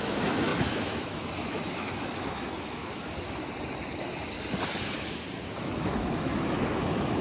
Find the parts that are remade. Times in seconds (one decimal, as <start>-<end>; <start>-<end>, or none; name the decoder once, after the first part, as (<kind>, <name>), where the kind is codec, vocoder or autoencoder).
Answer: 0.0-3.4 (autoencoder, DAC-VAE); 4.9-7.2